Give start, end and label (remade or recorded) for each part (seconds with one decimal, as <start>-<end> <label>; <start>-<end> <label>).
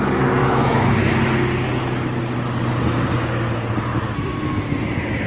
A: 0.0-0.4 recorded; 0.4-1.1 remade; 1.1-5.3 recorded